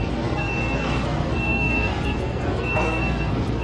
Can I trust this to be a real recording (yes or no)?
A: no